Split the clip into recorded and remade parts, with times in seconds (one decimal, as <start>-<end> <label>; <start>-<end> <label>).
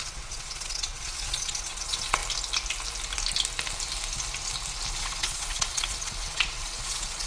0.0-2.2 remade; 2.2-5.0 recorded; 5.0-7.3 remade